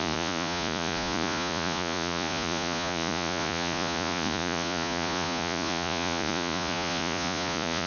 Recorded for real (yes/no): no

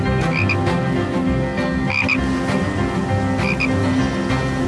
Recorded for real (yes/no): yes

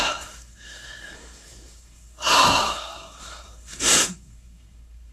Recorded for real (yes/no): no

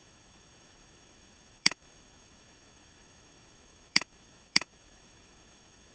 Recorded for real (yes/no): no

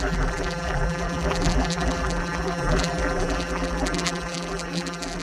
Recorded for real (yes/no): no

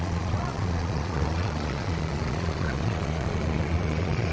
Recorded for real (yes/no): no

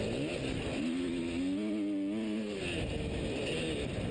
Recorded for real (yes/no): yes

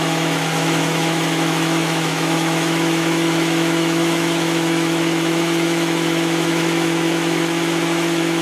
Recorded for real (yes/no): no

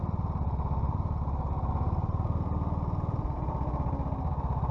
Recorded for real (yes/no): yes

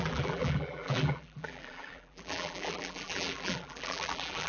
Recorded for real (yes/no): no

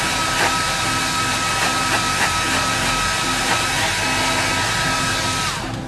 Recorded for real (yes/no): yes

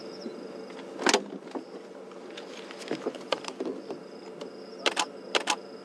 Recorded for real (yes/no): yes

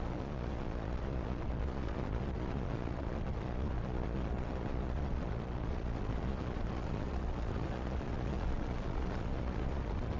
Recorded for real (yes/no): no